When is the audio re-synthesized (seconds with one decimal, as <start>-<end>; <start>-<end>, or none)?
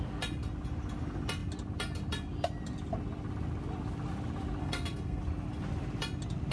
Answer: 4.6-5.2